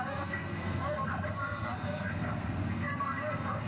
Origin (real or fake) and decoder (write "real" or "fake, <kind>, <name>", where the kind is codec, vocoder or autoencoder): fake, codec, SNAC